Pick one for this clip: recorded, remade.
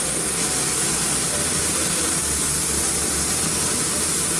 recorded